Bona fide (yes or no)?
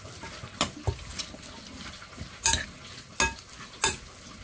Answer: yes